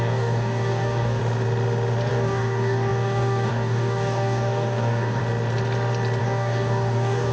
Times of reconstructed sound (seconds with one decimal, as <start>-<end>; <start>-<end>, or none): 0.0-1.2; 2.1-5.2; 6.2-7.3